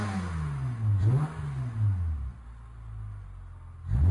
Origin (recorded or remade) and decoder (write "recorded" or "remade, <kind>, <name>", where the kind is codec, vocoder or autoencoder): recorded